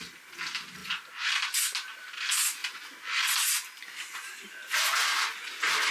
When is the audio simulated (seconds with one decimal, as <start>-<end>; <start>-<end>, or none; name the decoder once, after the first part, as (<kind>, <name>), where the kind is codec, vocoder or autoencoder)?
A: none